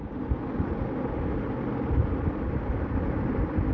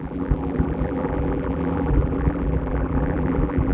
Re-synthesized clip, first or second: second